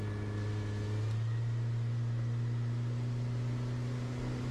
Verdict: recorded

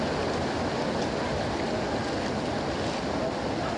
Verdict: recorded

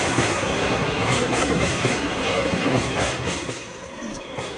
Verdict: remade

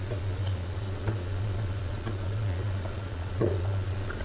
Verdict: remade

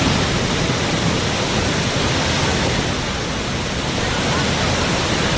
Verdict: recorded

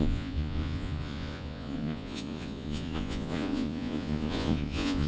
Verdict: remade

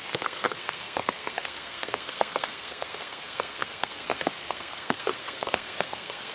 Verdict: remade